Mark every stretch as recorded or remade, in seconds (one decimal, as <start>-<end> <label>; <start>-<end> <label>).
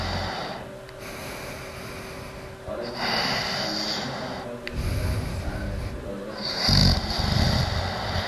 0.0-8.3 recorded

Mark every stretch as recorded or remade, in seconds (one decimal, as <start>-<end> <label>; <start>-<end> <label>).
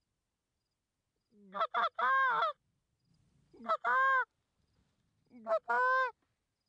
0.0-6.7 recorded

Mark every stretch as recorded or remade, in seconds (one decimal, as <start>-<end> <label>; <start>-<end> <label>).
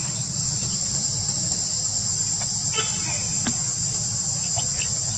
0.0-0.6 remade; 0.6-2.8 recorded; 2.8-3.3 remade; 3.3-4.4 recorded; 4.4-5.2 remade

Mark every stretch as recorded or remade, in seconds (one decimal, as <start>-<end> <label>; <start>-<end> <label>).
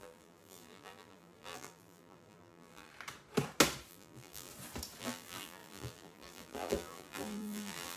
0.0-2.9 remade; 2.9-3.9 recorded; 3.9-4.5 remade; 4.5-5.0 recorded; 5.0-8.0 remade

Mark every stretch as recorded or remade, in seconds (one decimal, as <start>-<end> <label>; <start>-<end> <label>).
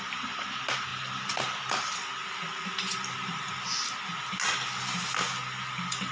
0.0-0.9 recorded; 0.9-3.5 remade; 3.5-6.1 recorded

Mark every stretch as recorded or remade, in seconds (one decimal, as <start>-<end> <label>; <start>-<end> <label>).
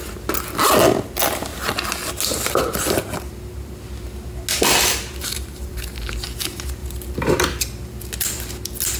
0.0-5.2 recorded; 5.2-5.9 remade; 5.9-6.8 recorded; 6.8-7.6 remade; 7.6-9.0 recorded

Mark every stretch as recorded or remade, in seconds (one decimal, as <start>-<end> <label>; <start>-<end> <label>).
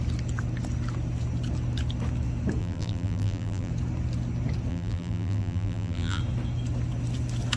0.0-2.6 recorded; 2.6-3.7 remade; 3.7-4.7 recorded; 4.7-6.2 remade; 6.2-7.6 recorded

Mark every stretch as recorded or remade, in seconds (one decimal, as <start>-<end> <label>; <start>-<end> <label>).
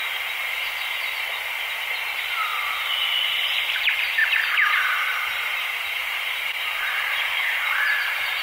0.0-2.1 recorded; 2.1-2.5 remade; 2.5-3.7 recorded; 3.7-4.2 remade; 4.2-5.2 recorded; 5.2-8.4 remade